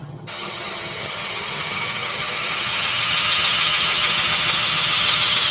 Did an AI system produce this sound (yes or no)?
yes